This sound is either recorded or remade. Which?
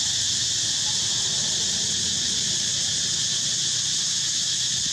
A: recorded